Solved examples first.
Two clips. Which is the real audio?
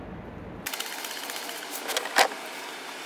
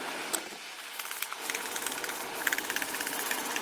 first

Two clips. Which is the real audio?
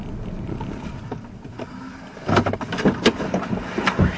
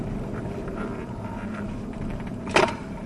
first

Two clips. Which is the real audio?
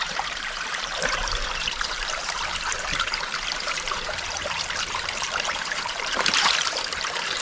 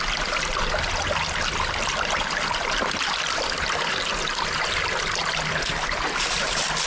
second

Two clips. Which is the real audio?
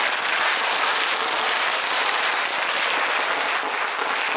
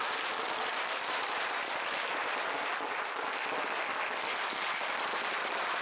first